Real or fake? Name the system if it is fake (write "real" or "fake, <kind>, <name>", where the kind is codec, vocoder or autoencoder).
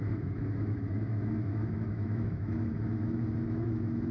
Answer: fake, autoencoder, DAC-VAE